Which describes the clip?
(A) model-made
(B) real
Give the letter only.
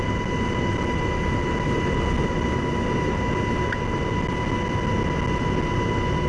B